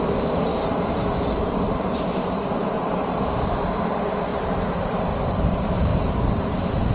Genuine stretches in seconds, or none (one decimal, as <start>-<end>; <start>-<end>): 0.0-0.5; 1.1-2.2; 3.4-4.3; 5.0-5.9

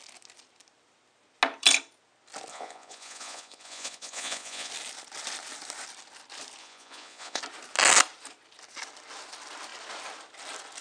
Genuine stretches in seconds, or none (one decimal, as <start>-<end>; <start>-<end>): 0.0-2.5; 4.7-6.6; 7.4-10.8

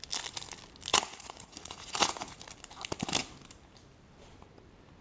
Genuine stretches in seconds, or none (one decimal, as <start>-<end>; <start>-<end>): 0.0-0.9; 2.4-5.0

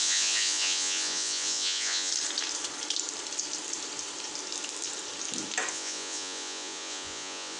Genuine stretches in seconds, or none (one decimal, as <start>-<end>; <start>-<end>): 2.1-5.7

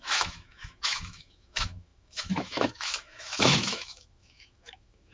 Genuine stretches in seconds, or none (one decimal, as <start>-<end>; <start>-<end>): none

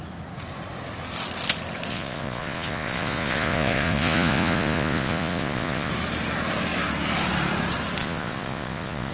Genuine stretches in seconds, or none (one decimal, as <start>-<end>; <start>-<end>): 0.0-1.9; 5.9-8.0